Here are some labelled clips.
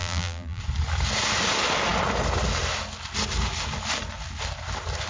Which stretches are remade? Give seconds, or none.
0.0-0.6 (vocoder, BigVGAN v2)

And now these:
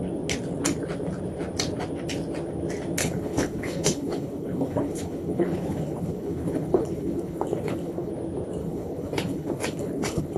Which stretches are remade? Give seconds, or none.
3.0-8.1 (codec, HILCodec); 8.6-10.4

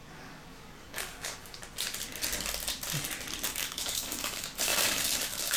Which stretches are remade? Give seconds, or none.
0.0-1.6 (codec, DAC); 3.5-5.6

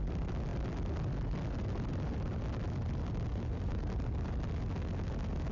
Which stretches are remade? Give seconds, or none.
3.3-4.1 (vocoder, BigVGAN v2)

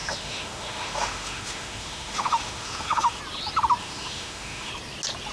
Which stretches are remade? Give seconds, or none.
0.0-3.2 (autoencoder, DAC-VAE); 3.8-4.7

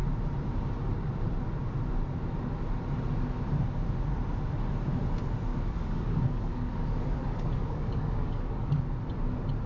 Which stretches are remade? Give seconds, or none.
5.5-8.8 (codec, DAC)

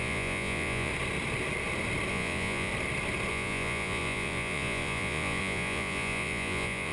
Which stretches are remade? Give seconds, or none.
0.0-0.9 (vocoder, Vocos); 2.1-2.7; 3.3-6.9

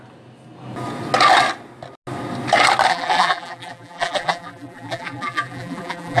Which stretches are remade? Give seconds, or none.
2.9-6.2 (vocoder, BigVGAN v2)